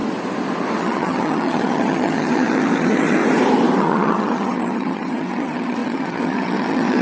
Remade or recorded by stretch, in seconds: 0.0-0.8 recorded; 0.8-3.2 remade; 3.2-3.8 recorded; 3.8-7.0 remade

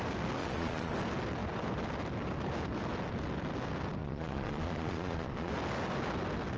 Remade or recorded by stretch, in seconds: 0.0-0.4 recorded; 0.4-0.9 remade; 0.9-4.0 recorded; 4.0-5.5 remade; 5.5-6.6 recorded

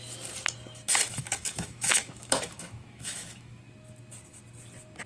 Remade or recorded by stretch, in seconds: 0.0-1.2 recorded; 1.2-3.6 remade; 3.6-5.1 recorded

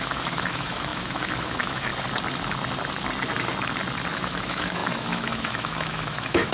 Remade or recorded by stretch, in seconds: 0.0-1.9 remade; 1.9-4.1 recorded; 4.1-6.5 remade

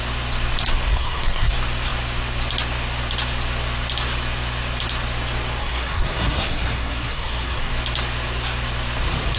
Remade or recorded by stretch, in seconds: 0.0-0.9 recorded; 0.9-1.5 remade; 1.5-5.6 recorded; 5.6-7.7 remade; 7.7-9.4 recorded

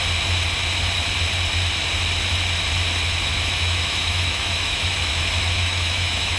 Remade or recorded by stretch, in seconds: 0.0-3.3 recorded; 3.3-6.4 remade